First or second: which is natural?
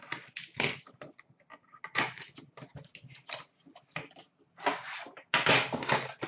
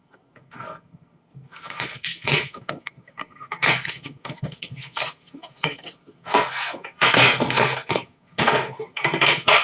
first